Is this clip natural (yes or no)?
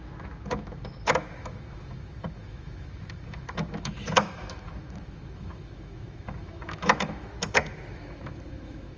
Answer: no